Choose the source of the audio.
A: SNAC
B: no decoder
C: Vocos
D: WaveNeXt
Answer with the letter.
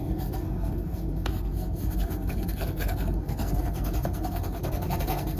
A